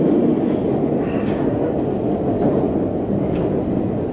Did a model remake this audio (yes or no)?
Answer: no